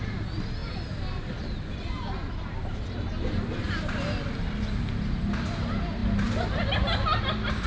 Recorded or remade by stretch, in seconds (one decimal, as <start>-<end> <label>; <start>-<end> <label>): 0.0-7.7 recorded